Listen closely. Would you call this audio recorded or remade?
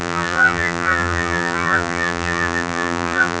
remade